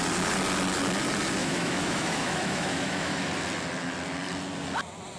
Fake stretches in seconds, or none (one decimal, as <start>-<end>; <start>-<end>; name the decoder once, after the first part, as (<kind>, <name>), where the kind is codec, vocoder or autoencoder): 1.4-3.3 (autoencoder, DAC-VAE)